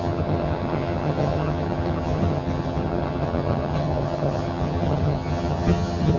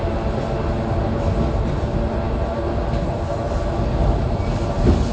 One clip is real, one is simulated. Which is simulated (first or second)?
first